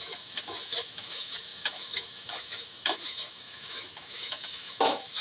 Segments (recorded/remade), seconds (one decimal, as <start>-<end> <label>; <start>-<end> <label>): 0.0-5.2 remade